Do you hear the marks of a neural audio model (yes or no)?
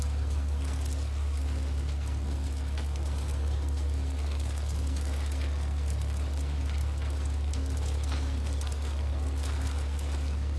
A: yes